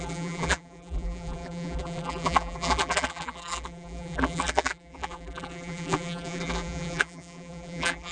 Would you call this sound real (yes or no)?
no